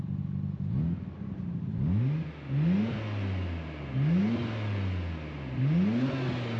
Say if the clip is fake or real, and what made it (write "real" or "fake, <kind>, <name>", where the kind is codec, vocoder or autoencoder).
real